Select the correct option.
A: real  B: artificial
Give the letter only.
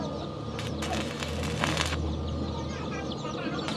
A